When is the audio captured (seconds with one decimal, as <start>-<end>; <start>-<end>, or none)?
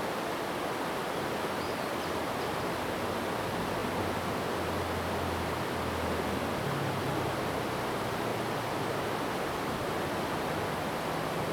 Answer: 0.0-11.5